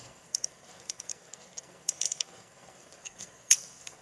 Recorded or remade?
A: remade